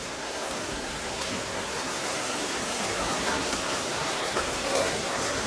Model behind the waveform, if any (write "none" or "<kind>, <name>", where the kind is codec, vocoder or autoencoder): codec, SNAC